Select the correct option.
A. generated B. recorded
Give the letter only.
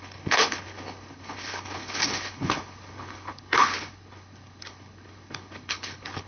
A